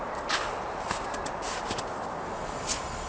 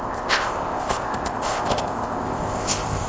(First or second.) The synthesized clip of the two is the second